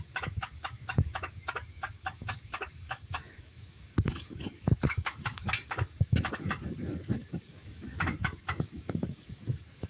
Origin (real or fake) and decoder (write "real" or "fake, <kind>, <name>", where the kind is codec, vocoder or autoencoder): fake, codec, DAC